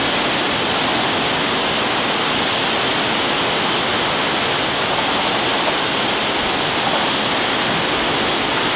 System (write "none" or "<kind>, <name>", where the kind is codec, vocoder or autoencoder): none